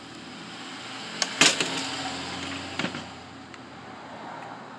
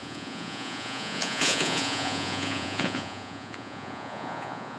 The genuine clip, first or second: first